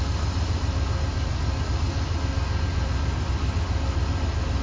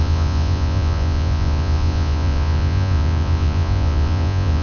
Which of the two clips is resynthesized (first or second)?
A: second